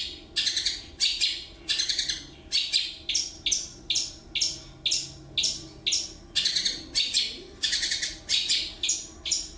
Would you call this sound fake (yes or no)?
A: no